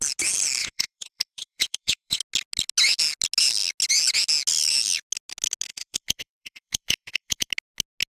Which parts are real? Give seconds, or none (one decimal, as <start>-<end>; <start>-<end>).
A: 0.0-0.6; 2.2-5.7; 7.5-8.2